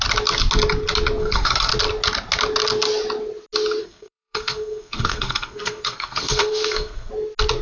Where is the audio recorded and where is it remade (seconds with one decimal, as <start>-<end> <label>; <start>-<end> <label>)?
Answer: 0.0-1.2 recorded; 1.2-1.7 remade; 1.7-3.8 recorded; 3.8-7.1 remade; 7.1-7.6 recorded